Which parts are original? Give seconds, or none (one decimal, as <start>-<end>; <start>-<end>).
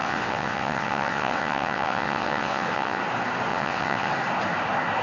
3.0-3.5; 4.1-5.0